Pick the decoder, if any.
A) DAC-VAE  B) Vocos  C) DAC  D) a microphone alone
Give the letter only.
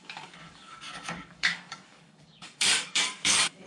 C